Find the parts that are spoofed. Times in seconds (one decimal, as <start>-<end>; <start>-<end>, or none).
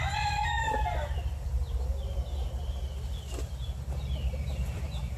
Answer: 0.0-1.9; 3.5-5.2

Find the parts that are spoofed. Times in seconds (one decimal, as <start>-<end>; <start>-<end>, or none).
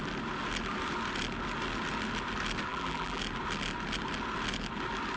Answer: 2.7-3.2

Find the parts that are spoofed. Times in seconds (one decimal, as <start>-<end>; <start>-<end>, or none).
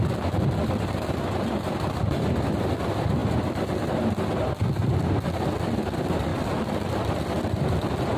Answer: 6.3-7.1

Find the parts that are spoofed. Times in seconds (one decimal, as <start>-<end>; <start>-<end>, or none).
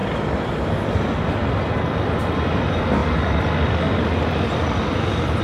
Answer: none